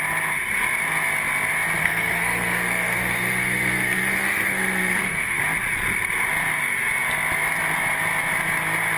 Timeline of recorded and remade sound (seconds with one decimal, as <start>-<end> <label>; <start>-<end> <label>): 0.0-1.8 recorded; 1.8-5.4 remade; 5.4-9.0 recorded